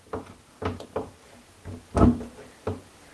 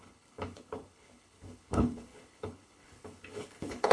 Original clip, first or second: first